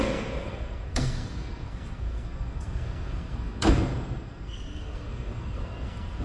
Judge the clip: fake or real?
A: fake